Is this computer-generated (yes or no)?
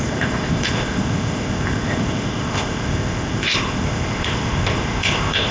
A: yes